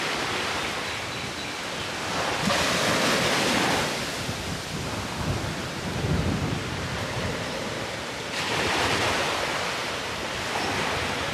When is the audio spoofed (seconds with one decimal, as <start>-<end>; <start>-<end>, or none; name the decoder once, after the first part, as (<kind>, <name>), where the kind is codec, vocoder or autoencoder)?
5.6-7.2 (vocoder, BigVGAN v2)

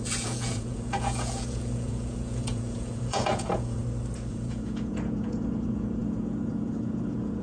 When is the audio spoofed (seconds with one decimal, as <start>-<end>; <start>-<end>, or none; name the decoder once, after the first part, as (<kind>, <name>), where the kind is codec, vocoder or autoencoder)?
0.0-3.8 (vocoder, Vocos); 4.3-7.4

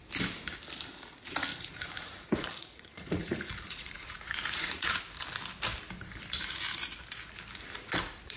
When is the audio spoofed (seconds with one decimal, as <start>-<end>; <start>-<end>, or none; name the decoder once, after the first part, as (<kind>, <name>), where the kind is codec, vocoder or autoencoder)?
1.5-5.0 (vocoder, Vocos)

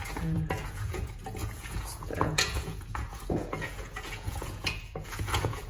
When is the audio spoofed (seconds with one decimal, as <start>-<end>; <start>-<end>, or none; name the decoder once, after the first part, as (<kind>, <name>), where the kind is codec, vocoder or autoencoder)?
0.0-5.7 (vocoder, Vocos)

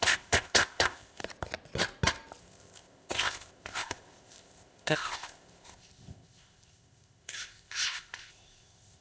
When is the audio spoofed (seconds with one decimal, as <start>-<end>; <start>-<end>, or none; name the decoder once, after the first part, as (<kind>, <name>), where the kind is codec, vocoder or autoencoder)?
0.0-1.2 (codec, ZipCodec); 2.4-9.0

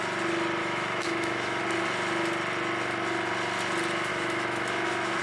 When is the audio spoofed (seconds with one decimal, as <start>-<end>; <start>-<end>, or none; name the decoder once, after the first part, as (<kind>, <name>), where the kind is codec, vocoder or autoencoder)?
0.6-1.6 (autoencoder, DAC-VAE); 4.1-5.2